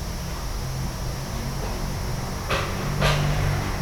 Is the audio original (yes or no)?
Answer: yes